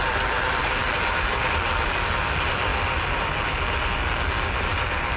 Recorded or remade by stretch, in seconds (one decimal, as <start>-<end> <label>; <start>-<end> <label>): 0.0-5.2 recorded

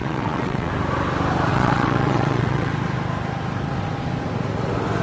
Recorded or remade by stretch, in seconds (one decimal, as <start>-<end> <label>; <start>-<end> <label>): 0.0-0.7 remade; 0.7-1.5 recorded; 1.5-2.7 remade; 2.7-5.0 recorded

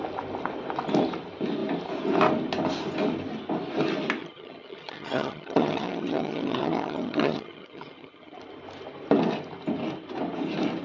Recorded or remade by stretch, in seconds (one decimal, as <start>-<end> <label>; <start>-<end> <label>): 0.0-4.2 recorded; 4.2-8.4 remade; 8.4-10.8 recorded

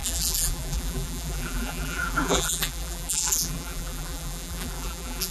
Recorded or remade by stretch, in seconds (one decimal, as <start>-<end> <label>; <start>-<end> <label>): 0.0-5.3 remade

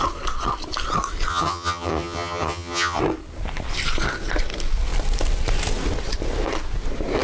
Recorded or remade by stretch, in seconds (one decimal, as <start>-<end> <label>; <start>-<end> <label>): 0.0-1.3 recorded; 1.3-3.0 remade; 3.0-7.2 recorded

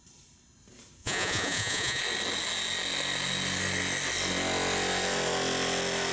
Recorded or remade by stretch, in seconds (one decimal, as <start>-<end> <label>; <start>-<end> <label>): 0.0-1.0 recorded; 1.0-2.0 remade; 2.0-6.1 recorded

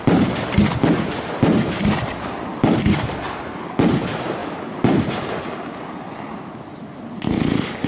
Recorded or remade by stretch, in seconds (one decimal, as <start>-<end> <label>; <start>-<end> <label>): 0.0-7.9 recorded